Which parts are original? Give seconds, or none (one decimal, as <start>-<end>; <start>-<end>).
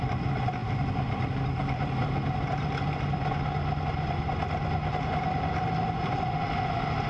0.0-7.1